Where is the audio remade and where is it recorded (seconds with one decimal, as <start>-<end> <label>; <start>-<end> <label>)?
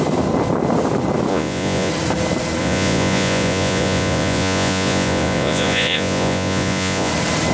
0.0-1.3 recorded; 1.3-1.9 remade; 1.9-2.6 recorded; 2.6-7.1 remade; 7.1-7.5 recorded